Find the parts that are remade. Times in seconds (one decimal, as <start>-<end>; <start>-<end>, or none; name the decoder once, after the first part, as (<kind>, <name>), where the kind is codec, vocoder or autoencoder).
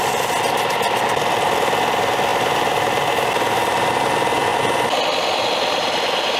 none